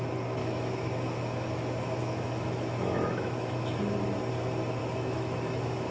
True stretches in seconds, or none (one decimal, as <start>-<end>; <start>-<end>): 0.0-0.4; 3.8-4.8